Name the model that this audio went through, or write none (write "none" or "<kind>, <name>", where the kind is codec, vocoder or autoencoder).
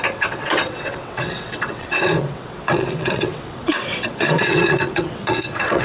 vocoder, WaveNeXt